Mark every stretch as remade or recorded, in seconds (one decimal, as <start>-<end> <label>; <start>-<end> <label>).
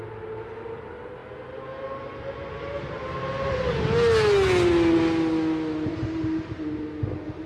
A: 0.0-7.5 recorded